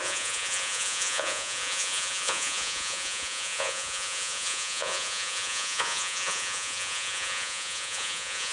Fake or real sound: fake